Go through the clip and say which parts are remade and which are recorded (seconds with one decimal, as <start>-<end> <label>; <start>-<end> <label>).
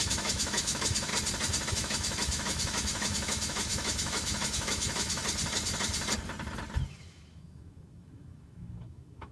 0.0-1.1 remade; 1.1-1.7 recorded; 1.7-5.2 remade; 5.2-6.9 recorded; 6.9-9.3 remade